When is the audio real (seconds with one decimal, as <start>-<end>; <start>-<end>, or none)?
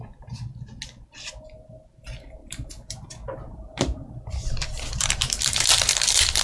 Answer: 0.0-2.4